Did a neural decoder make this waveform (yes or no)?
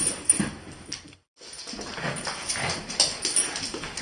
no